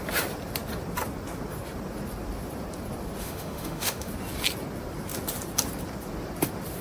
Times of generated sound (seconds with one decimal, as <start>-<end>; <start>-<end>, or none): 3.2-4.1